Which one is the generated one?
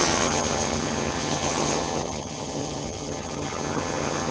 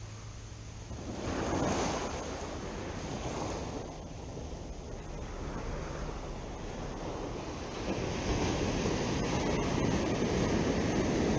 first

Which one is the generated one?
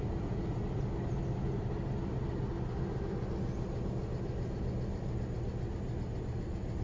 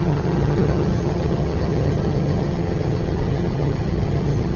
second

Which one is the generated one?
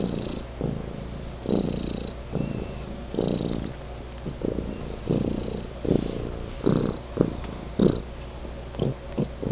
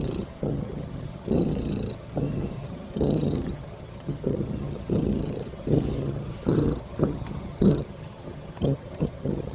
second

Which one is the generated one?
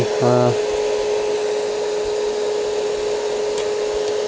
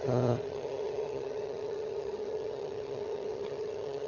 second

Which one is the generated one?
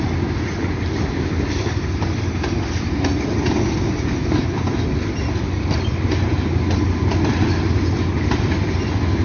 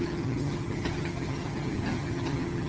second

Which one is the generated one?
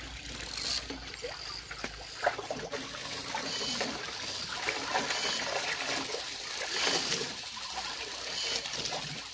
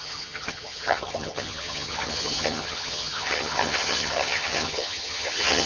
second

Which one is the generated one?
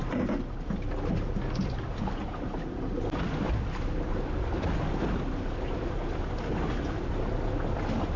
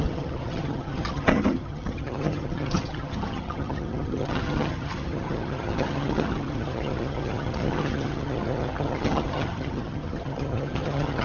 second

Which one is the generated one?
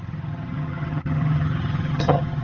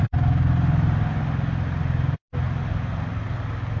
first